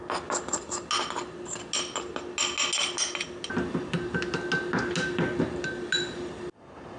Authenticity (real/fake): real